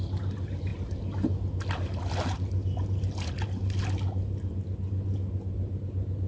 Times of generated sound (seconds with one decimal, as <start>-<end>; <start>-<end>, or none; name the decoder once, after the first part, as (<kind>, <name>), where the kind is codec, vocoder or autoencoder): none

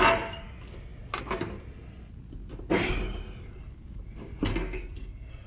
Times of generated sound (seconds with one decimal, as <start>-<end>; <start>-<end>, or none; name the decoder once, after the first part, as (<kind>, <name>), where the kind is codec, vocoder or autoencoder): 4.5-5.5 (codec, SNAC)

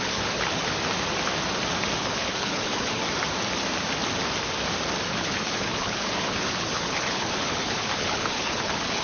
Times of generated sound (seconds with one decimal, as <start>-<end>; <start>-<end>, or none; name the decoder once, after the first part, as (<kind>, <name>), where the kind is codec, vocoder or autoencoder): 0.0-0.6 (codec, HILCodec); 2.0-3.0; 5.1-9.0